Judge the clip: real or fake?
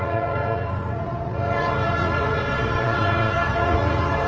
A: fake